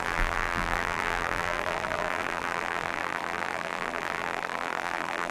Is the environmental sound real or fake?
fake